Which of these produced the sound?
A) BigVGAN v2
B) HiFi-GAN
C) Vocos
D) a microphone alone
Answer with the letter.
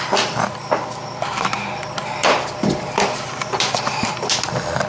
A